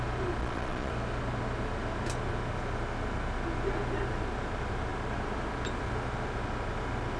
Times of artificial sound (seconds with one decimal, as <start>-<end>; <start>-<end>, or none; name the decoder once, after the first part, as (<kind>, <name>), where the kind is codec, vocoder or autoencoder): 0.4-0.9 (vocoder, Vocos)